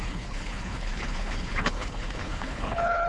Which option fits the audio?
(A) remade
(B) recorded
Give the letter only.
A